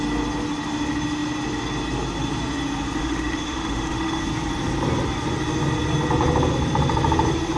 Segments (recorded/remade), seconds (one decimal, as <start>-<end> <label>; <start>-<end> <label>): 0.0-3.0 recorded; 3.0-4.2 remade; 4.2-7.6 recorded